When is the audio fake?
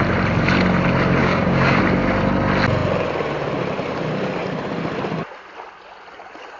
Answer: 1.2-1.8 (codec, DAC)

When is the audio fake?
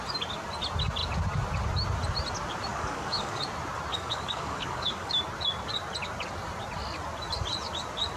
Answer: 2.7-3.4 (codec, DAC); 3.9-5.2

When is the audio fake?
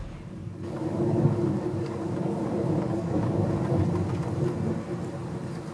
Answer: 0.4-3.8 (codec, DAC)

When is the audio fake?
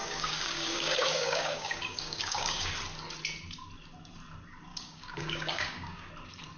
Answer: 0.0-2.7 (codec, DAC); 4.7-6.1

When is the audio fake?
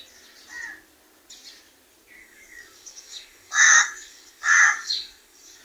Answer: 2.2-5.6 (codec, DAC)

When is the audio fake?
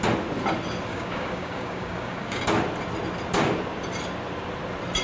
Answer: 0.9-2.4 (codec, DAC)